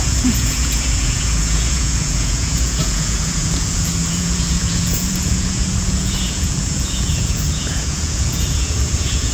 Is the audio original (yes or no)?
no